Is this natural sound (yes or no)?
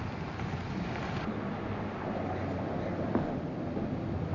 yes